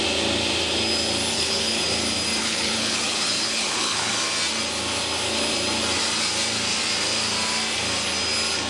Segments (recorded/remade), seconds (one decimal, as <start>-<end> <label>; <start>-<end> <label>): 0.0-1.3 recorded; 1.3-1.8 remade; 1.8-2.4 recorded; 2.4-4.1 remade; 4.1-8.7 recorded